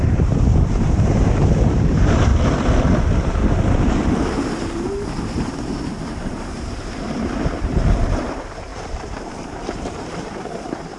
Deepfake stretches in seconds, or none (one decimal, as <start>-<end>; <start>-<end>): 0.0-2.3; 3.0-3.4; 5.1-11.0